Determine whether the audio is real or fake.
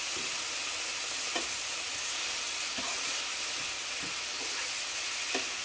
real